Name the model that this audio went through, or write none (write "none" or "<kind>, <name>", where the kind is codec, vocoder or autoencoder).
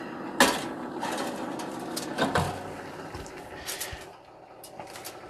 none